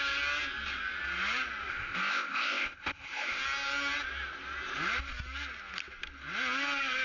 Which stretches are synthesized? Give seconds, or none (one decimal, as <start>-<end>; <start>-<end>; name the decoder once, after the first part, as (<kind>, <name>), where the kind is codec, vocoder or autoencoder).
1.7-3.4 (codec, ZipCodec)